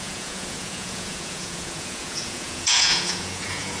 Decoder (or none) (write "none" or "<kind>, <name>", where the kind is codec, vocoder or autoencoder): vocoder, Vocos